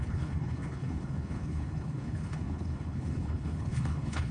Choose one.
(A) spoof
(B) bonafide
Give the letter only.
A